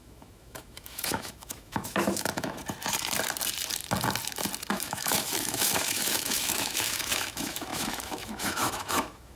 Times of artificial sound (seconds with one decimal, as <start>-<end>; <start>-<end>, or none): 0.0-2.6; 4.7-9.4